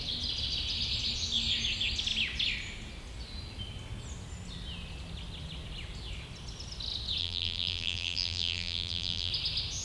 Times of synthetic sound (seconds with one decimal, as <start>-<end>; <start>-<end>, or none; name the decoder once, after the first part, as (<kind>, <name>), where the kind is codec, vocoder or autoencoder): 7.2-9.3 (vocoder, BigVGAN v2)